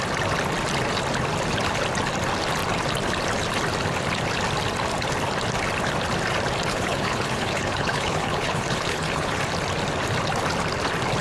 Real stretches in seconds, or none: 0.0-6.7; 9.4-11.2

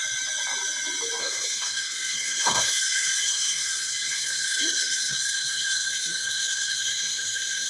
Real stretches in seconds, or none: 0.0-1.2

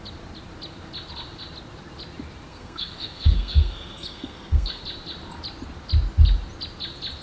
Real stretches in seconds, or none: 0.0-2.5; 4.8-7.2